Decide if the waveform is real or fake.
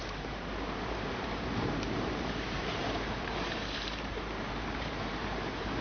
fake